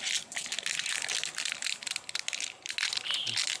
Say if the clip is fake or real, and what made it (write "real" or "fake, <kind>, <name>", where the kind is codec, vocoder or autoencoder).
real